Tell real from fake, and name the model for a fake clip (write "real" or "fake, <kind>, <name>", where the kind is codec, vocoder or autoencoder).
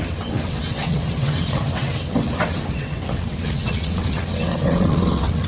fake, vocoder, WaveNeXt